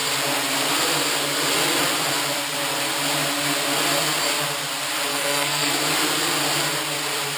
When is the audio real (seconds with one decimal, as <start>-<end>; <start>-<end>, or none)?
0.0-5.1; 5.7-7.4